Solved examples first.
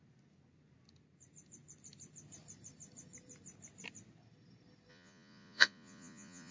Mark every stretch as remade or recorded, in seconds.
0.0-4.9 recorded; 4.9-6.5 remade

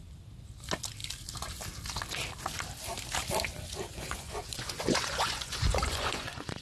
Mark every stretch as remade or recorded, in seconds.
0.0-3.9 recorded; 3.9-6.6 remade

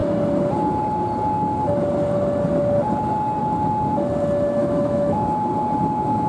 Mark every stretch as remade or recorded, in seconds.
0.0-4.6 recorded; 4.6-5.5 remade; 5.5-6.3 recorded

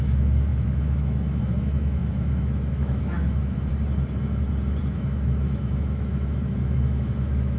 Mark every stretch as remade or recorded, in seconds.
0.0-3.7 remade; 3.7-4.8 recorded; 4.8-7.6 remade

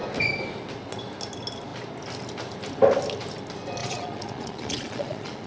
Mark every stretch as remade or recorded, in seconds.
0.0-3.8 recorded; 3.8-5.5 remade